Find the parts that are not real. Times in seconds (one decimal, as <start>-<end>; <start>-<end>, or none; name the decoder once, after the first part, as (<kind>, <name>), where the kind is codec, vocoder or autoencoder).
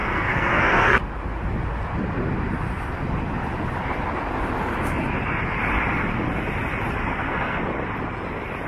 0.0-1.0 (codec, SNAC); 7.1-7.6